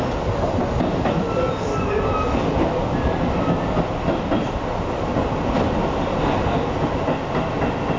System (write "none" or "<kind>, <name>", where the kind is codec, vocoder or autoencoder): none